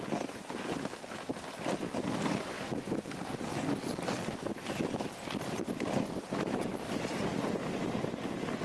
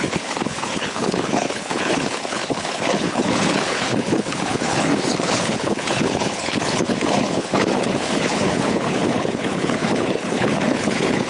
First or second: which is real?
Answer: first